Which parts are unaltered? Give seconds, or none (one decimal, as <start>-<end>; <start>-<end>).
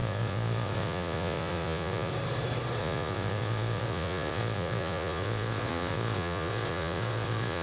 2.1-2.8